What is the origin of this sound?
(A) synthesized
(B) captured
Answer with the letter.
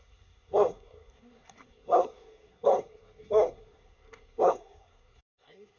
A